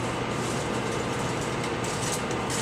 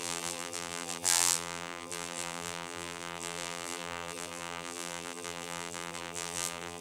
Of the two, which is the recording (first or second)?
first